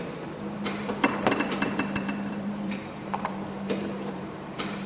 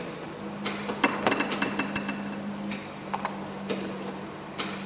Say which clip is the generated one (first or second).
first